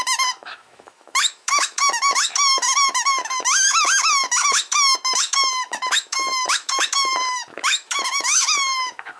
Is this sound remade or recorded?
remade